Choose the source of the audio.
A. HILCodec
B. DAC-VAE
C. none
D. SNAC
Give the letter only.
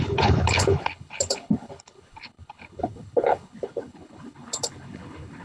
A